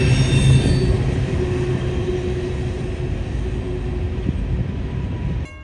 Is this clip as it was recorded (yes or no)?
yes